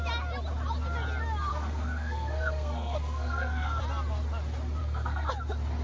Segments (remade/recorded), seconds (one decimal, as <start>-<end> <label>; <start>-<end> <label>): 0.0-1.5 recorded; 1.5-3.8 remade; 3.8-4.8 recorded; 4.8-5.3 remade; 5.3-5.8 recorded